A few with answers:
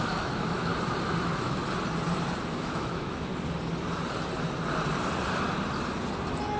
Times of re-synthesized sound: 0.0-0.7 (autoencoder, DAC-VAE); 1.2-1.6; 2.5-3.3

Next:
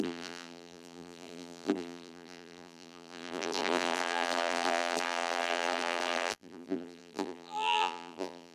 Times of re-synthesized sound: 0.0-8.5 (vocoder, BigVGAN v2)

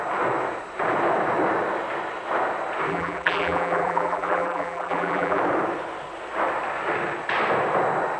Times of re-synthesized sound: 2.9-5.4 (vocoder, BigVGAN v2)

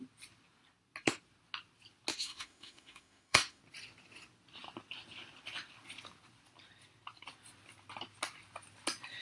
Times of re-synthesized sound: 2.1-3.6 (autoencoder, DAC-VAE)

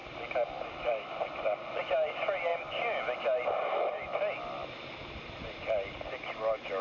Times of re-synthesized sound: none